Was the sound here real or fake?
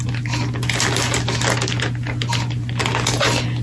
real